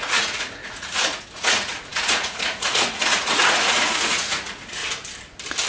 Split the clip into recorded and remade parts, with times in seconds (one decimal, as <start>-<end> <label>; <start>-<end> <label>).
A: 0.0-4.8 remade; 4.8-5.7 recorded